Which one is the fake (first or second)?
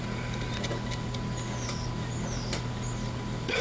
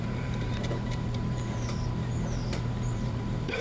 second